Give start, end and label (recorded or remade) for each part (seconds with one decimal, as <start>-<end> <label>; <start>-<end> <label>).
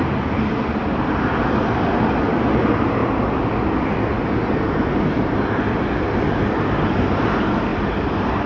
0.0-8.5 recorded